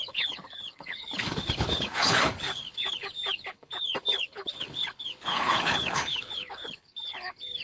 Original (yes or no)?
no